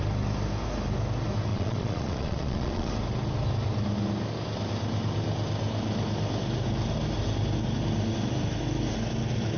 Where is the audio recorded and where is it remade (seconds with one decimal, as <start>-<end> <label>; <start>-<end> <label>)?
0.0-1.5 recorded; 1.5-2.9 remade; 2.9-9.6 recorded